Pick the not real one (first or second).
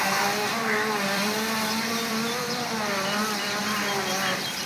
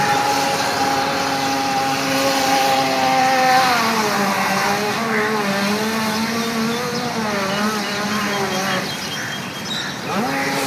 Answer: first